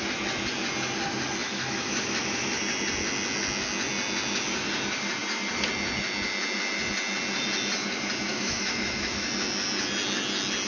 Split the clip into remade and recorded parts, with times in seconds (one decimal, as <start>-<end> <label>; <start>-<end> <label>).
0.0-1.4 recorded; 1.4-2.6 remade; 2.6-8.3 recorded; 8.3-9.3 remade; 9.3-10.7 recorded